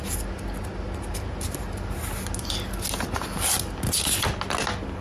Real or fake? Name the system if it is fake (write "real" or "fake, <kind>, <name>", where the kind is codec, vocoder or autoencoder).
real